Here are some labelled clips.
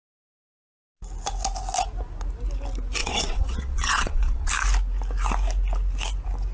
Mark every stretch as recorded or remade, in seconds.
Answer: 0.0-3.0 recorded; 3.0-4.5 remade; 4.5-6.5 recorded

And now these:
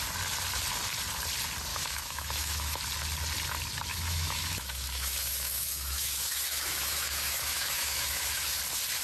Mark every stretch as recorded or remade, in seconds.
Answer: 0.0-1.7 recorded; 1.7-2.8 remade; 2.8-3.9 recorded; 3.9-8.6 remade; 8.6-9.0 recorded

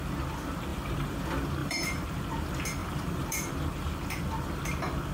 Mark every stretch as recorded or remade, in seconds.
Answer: 0.0-0.7 recorded; 0.7-1.2 remade; 1.2-1.6 recorded; 1.6-2.2 remade; 2.2-2.8 recorded; 2.8-3.5 remade; 3.5-5.1 recorded

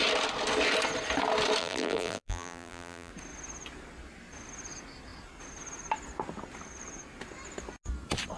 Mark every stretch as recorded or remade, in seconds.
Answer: 0.0-1.6 recorded; 1.6-3.1 remade; 3.1-8.4 recorded

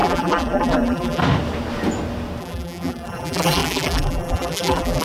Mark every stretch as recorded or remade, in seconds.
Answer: 0.0-1.2 remade; 1.2-2.4 recorded; 2.4-5.0 remade